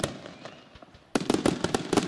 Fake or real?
real